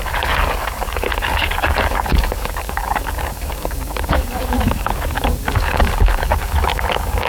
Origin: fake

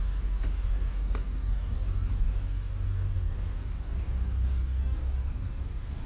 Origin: fake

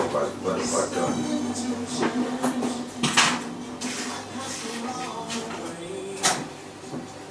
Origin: real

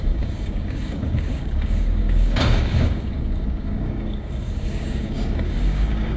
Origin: fake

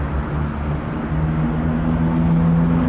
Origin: real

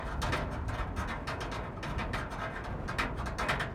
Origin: real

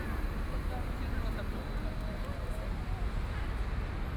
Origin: real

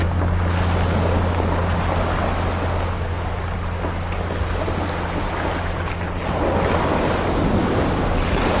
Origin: real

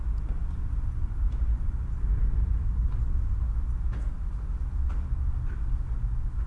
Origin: real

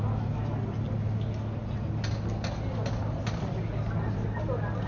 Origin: real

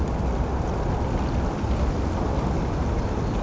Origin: real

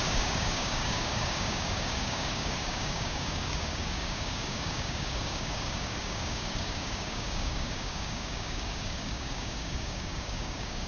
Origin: fake